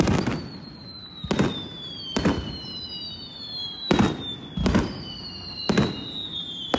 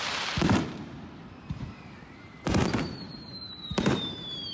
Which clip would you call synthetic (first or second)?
second